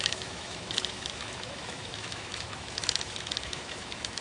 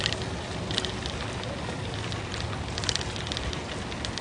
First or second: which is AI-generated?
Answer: first